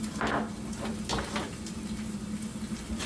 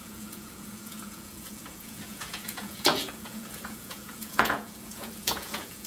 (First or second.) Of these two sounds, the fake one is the second